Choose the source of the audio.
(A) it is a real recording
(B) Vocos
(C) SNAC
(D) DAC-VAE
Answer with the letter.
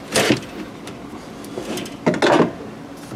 A